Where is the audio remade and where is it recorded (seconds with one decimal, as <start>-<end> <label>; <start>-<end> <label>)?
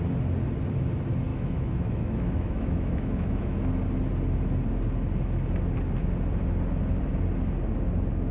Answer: 0.0-1.3 recorded; 1.3-3.7 remade; 3.7-8.3 recorded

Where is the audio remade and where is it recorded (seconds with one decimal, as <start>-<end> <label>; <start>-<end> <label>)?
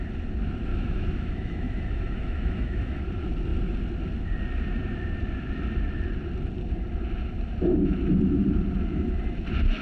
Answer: 0.0-0.7 recorded; 0.7-3.0 remade; 3.0-9.8 recorded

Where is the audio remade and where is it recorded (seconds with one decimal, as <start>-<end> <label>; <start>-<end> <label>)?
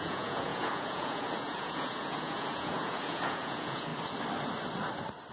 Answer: 0.0-3.9 remade; 3.9-5.3 recorded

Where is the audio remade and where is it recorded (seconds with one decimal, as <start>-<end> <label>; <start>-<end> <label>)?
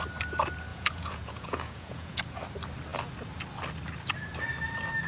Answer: 0.0-0.7 recorded; 0.7-2.2 remade; 2.2-5.1 recorded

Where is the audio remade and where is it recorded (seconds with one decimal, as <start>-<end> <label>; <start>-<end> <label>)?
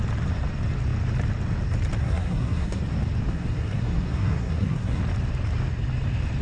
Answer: 0.0-2.0 recorded; 2.0-2.8 remade; 2.8-3.3 recorded; 3.3-5.0 remade; 5.0-6.4 recorded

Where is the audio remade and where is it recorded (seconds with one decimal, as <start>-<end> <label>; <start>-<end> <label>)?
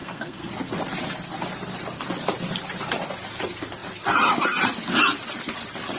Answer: 0.0-0.5 remade; 0.5-6.0 recorded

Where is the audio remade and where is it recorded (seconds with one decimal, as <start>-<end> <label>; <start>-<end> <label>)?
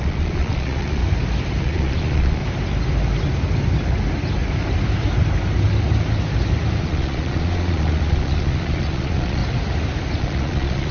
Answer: 0.0-1.0 remade; 1.0-1.6 recorded; 1.6-2.4 remade; 2.4-6.8 recorded; 6.8-9.4 remade; 9.4-10.2 recorded; 10.2-10.9 remade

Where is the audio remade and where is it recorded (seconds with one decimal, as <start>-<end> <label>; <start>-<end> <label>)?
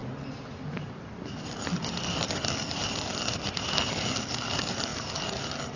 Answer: 0.0-5.8 recorded